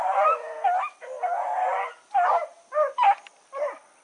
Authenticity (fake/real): real